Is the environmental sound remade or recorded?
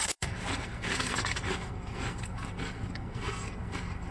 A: remade